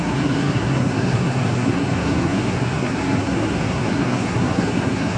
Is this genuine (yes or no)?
no